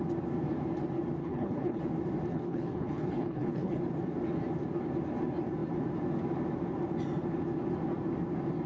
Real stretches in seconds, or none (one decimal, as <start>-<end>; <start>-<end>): 0.0-1.2; 1.8-2.3; 3.8-8.7